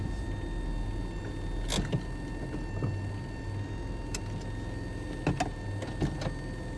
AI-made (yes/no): no